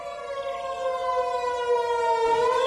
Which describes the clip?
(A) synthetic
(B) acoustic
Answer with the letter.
B